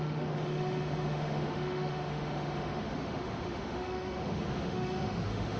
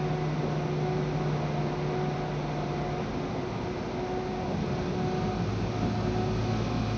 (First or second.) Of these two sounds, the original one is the second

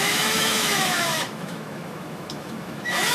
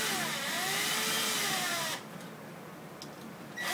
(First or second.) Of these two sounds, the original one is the second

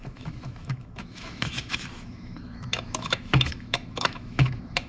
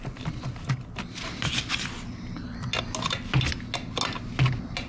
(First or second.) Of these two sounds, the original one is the second